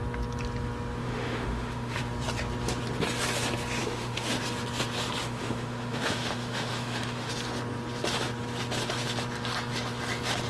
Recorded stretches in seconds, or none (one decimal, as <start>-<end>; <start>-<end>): 0.0-1.0; 2.0-3.8; 4.4-5.2; 7.3-10.5